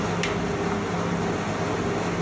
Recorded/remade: recorded